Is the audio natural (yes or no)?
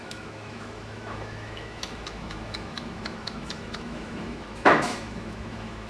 no